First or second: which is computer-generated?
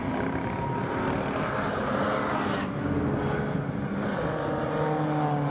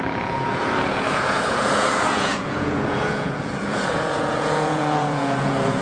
second